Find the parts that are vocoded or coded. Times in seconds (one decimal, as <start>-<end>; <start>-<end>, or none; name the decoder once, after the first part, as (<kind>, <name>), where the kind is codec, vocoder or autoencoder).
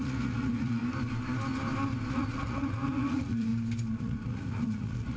0.0-0.8 (vocoder, Vocos); 2.1-3.5; 4.0-5.2